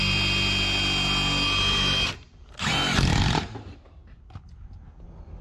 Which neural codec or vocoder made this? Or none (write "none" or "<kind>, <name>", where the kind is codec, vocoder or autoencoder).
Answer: none